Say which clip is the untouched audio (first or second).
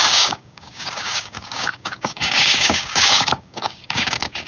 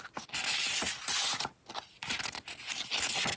second